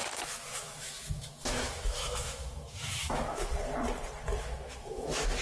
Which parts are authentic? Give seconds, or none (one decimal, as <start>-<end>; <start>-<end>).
3.5-4.4